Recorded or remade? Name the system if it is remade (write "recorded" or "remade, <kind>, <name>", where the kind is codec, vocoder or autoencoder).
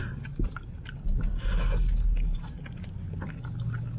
recorded